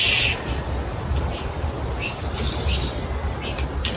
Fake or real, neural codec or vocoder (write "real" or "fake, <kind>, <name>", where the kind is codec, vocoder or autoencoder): real